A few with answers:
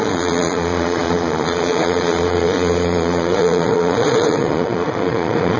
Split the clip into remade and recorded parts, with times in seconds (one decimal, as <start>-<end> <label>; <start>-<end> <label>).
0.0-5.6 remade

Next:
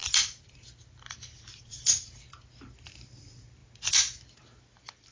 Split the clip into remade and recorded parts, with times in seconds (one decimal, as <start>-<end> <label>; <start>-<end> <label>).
0.0-3.1 remade; 3.1-5.1 recorded

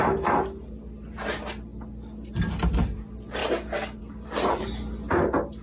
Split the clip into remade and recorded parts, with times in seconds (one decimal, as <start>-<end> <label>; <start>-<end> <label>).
0.0-5.6 recorded

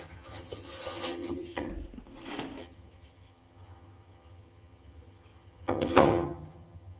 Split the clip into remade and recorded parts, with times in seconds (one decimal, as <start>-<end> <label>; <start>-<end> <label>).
0.0-1.7 remade; 1.7-2.6 recorded; 2.6-7.0 remade

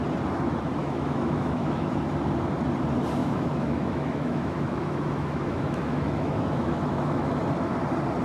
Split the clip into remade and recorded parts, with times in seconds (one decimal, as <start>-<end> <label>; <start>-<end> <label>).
0.0-0.8 recorded; 0.8-1.9 remade; 1.9-3.2 recorded; 3.2-7.3 remade; 7.3-8.2 recorded

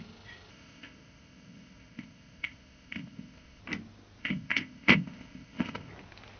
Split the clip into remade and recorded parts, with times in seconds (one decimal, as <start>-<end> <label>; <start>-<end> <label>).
0.0-0.5 recorded; 0.5-3.6 remade; 3.6-4.2 recorded; 4.2-5.9 remade; 5.9-6.4 recorded